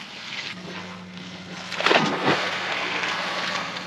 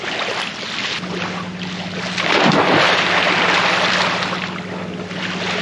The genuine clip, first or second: second